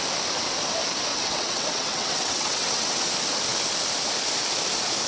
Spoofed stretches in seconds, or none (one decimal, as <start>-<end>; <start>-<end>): 1.1-3.0